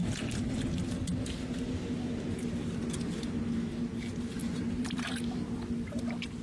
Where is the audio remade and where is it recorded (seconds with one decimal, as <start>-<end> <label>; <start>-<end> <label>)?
0.0-4.4 recorded; 4.4-5.0 remade; 5.0-6.4 recorded